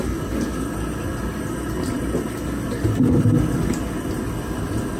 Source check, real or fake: real